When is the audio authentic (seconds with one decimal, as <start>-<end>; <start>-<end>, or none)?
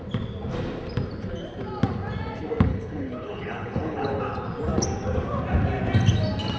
0.0-2.7; 4.2-6.6